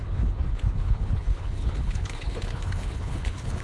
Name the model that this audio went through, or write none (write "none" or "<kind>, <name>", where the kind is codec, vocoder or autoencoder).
codec, HILCodec